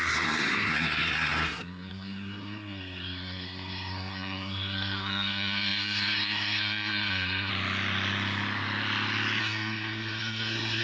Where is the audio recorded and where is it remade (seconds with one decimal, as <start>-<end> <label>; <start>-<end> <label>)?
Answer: 0.0-7.5 remade; 7.5-9.4 recorded; 9.4-10.8 remade